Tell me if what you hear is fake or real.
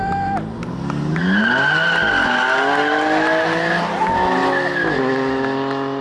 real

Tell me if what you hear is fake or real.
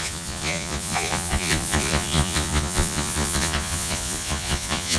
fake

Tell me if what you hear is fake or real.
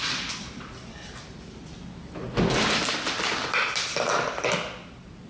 real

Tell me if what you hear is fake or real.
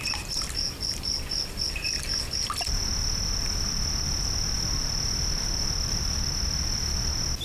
real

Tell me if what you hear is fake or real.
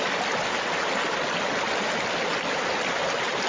real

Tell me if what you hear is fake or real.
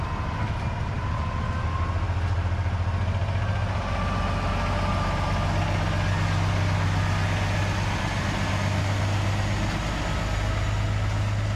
real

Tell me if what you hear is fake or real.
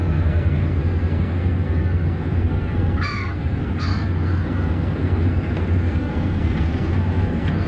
fake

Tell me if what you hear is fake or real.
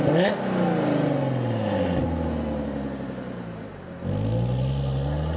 real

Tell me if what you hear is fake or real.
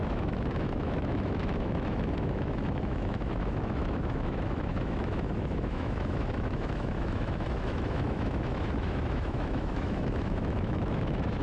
fake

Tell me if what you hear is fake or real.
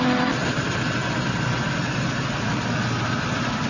fake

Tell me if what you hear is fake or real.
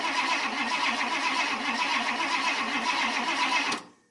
real